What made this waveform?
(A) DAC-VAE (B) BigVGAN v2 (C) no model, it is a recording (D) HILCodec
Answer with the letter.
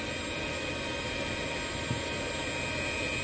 C